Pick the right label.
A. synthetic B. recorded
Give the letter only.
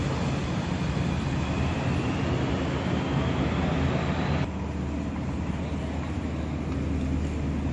B